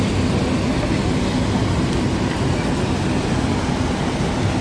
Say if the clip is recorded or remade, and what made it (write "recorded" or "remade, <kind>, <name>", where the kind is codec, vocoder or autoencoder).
recorded